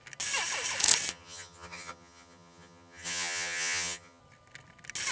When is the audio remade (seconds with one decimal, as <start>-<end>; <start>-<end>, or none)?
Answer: 1.1-4.2